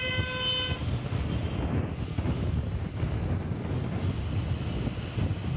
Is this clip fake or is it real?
real